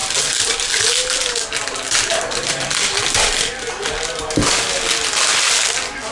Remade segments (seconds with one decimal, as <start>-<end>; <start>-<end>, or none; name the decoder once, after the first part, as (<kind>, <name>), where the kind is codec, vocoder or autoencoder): none